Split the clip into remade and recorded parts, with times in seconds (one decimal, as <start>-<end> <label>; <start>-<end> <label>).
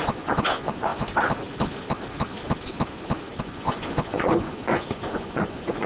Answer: 0.0-0.9 remade; 0.9-3.4 recorded; 3.4-5.9 remade